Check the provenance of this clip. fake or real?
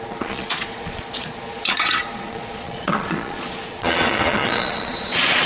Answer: fake